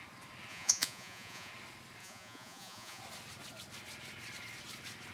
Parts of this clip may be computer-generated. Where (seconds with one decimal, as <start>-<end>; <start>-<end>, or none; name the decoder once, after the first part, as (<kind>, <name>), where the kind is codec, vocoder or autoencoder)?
0.5-1.5 (vocoder, Vocos); 2.0-3.0